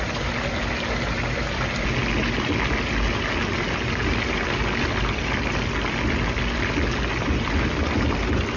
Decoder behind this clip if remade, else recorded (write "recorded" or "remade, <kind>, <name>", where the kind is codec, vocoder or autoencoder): recorded